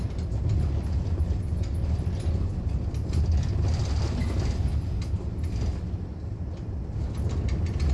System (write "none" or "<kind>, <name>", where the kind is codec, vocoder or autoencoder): none